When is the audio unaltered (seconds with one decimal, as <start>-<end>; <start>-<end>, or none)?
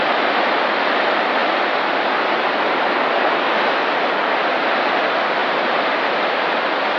0.0-5.4; 6.0-7.0